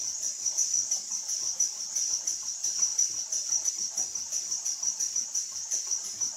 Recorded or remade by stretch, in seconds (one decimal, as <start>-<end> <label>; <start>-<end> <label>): 0.0-2.4 recorded; 2.4-2.9 remade; 2.9-3.7 recorded; 3.7-6.4 remade